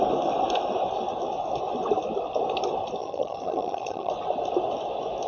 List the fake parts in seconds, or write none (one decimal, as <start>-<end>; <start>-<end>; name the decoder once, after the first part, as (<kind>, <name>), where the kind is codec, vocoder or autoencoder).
3.0-4.1 (vocoder, HiFi-GAN)